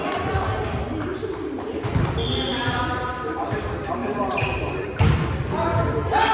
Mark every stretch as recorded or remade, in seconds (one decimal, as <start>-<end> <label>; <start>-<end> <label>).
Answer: 0.0-6.3 recorded